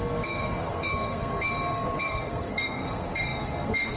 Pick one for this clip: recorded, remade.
remade